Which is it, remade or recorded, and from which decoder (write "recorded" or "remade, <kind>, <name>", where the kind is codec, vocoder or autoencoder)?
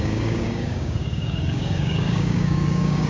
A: remade, codec, DAC